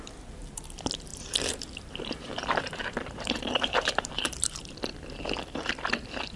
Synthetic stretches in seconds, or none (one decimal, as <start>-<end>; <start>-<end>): 1.1-4.6